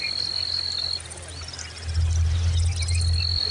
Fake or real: real